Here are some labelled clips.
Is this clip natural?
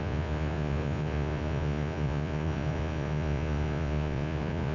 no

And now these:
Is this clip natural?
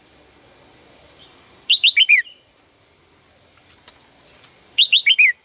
no